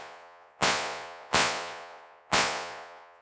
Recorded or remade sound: remade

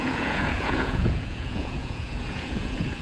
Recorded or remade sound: remade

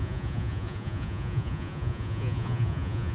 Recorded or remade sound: remade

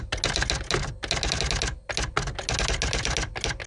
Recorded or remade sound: recorded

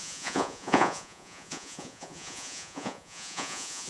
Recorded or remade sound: remade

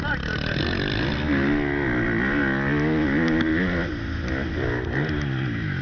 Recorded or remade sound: recorded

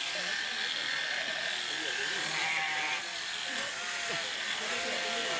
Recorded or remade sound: recorded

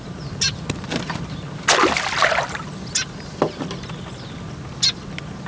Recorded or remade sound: recorded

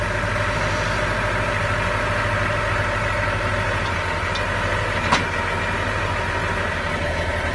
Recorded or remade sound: recorded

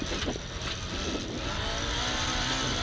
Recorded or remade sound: recorded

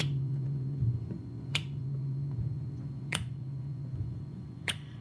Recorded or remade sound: remade